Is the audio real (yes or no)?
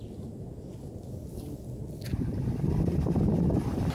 yes